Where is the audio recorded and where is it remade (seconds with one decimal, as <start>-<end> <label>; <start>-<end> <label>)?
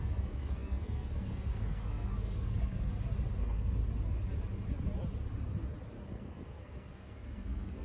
0.0-2.9 remade; 2.9-3.4 recorded; 3.4-3.8 remade; 3.8-6.0 recorded; 6.0-7.8 remade